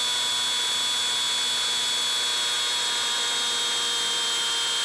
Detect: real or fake real